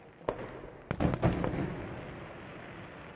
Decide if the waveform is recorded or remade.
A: recorded